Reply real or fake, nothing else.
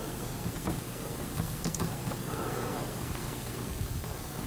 fake